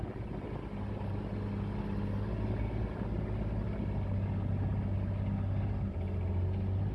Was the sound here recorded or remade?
recorded